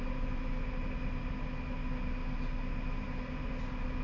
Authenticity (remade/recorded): recorded